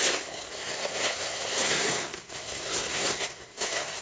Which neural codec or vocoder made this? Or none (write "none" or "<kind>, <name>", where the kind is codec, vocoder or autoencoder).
codec, SNAC